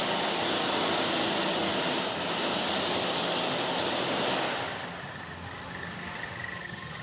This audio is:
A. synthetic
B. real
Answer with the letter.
B